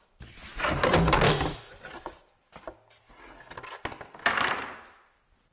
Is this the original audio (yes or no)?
yes